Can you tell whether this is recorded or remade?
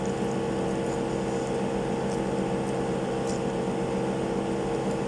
recorded